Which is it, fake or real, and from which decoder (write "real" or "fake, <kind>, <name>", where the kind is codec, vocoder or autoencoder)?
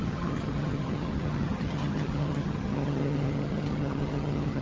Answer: fake, vocoder, HiFi-GAN